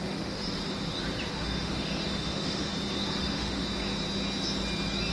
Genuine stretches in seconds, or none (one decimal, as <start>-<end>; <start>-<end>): 0.4-1.3; 2.7-3.2; 3.6-5.1